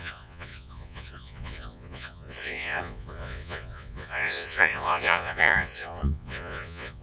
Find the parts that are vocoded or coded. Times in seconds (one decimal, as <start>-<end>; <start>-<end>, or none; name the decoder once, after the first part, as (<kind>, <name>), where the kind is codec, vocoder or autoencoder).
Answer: 0.0-7.0 (vocoder, Vocos)